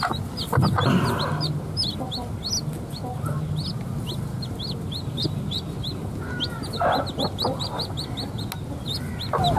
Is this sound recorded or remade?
recorded